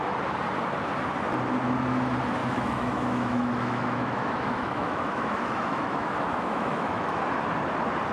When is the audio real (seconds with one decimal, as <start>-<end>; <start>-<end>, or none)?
0.0-2.4; 7.2-8.1